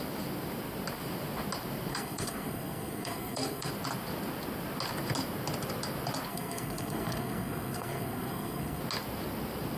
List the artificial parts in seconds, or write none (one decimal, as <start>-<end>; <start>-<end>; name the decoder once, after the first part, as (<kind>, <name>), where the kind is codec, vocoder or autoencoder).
1.9-3.7 (codec, SNAC); 6.3-8.8